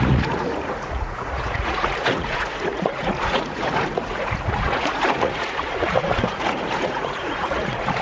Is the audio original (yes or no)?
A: no